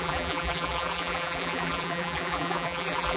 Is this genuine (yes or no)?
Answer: no